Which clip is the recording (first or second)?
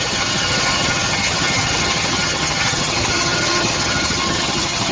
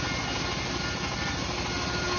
second